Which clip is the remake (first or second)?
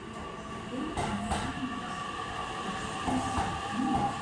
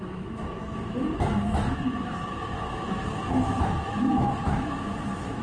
second